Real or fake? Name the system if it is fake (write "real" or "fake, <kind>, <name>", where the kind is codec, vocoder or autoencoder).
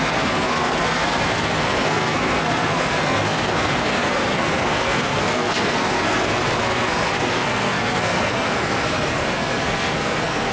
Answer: fake, codec, SNAC